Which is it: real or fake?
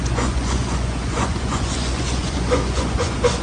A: fake